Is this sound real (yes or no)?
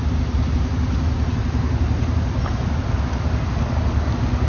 yes